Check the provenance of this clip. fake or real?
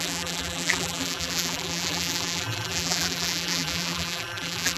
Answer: fake